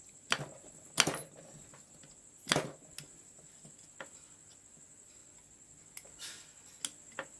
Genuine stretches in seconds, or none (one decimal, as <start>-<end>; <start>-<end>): 0.0-7.4